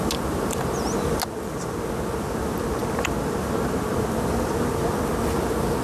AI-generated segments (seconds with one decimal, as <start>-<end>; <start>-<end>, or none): none

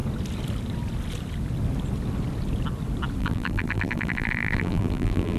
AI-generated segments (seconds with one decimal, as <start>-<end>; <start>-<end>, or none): 3.2-5.4

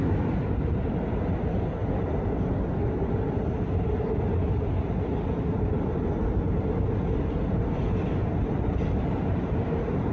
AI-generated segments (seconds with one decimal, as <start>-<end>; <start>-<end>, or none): none